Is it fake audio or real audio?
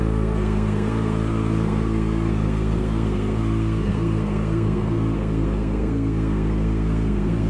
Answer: fake